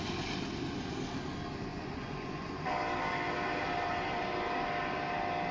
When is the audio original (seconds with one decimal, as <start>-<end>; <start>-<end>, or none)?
0.0-1.7; 2.7-5.5